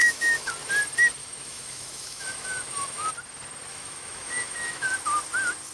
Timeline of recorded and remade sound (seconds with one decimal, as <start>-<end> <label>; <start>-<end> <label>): 0.0-0.5 remade; 0.5-1.2 recorded; 1.2-3.1 remade; 3.1-3.7 recorded; 3.7-4.9 remade; 4.9-5.7 recorded